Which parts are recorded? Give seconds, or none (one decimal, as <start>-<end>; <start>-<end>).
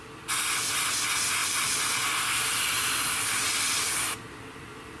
0.0-5.0